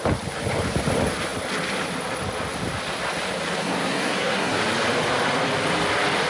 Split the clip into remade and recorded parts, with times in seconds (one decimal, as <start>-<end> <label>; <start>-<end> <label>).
0.0-3.6 recorded; 3.6-4.6 remade; 4.6-6.3 recorded